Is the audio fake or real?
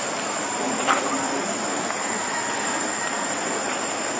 real